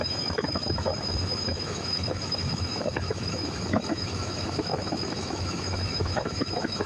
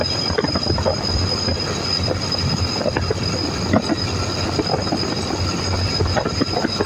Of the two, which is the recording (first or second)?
second